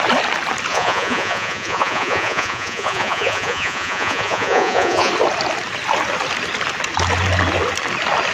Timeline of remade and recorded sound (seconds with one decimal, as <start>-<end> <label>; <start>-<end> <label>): 0.0-0.7 recorded; 0.7-5.1 remade; 5.1-8.3 recorded